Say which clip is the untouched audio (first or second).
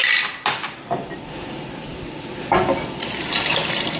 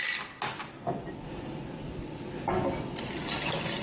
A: second